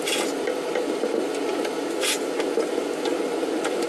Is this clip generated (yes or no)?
no